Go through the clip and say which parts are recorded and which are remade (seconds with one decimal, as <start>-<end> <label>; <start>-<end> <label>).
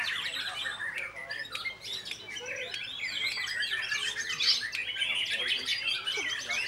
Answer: 0.0-6.7 recorded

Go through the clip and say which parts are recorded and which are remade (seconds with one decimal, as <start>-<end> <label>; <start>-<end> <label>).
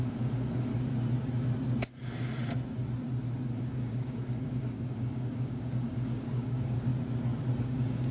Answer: 0.0-0.7 remade; 0.7-3.6 recorded; 3.6-6.9 remade; 6.9-7.6 recorded; 7.6-8.1 remade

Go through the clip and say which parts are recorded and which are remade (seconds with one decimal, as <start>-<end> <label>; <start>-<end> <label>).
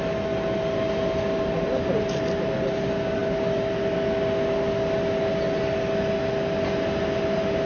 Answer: 0.0-7.7 recorded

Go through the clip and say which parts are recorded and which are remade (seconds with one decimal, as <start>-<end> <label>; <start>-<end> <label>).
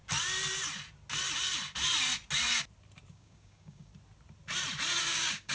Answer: 0.0-3.1 recorded; 3.1-3.9 remade; 3.9-5.0 recorded; 5.0-5.5 remade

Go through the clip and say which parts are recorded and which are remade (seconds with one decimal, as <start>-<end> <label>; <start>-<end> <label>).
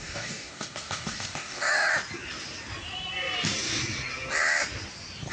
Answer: 0.0-1.9 remade; 1.9-5.3 recorded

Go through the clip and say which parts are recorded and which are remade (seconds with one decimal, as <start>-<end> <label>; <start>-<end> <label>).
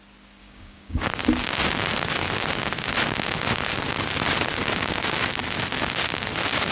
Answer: 0.0-0.4 recorded; 0.4-1.1 remade; 1.1-6.7 recorded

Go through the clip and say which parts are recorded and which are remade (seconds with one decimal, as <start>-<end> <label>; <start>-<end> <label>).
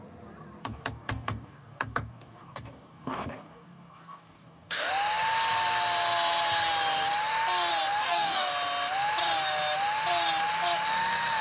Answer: 0.0-0.6 recorded; 0.6-4.9 remade; 4.9-8.0 recorded; 8.0-8.5 remade; 8.5-11.4 recorded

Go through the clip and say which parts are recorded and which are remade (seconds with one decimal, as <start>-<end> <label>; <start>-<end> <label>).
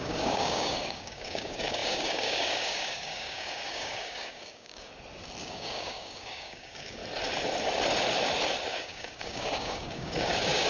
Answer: 0.0-4.9 remade; 4.9-5.4 recorded; 5.4-7.0 remade; 7.0-8.7 recorded; 8.7-10.7 remade